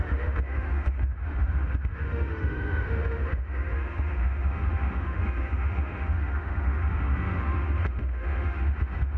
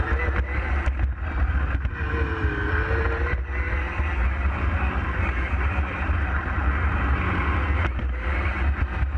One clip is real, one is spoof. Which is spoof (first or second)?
first